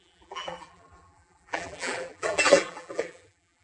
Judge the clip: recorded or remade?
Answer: remade